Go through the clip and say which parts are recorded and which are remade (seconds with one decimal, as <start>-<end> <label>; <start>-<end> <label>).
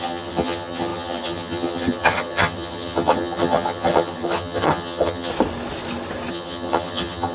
0.0-5.3 remade; 5.3-6.3 recorded; 6.3-7.3 remade